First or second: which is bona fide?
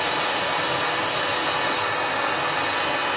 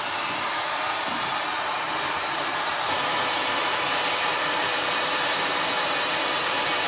first